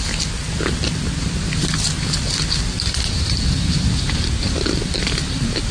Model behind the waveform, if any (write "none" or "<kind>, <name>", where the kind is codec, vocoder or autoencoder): none